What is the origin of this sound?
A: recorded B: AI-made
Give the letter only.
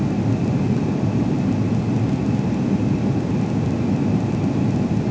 A